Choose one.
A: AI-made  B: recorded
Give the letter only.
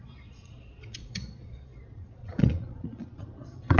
A